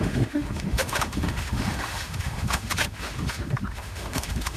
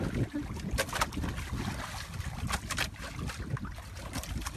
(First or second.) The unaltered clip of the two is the second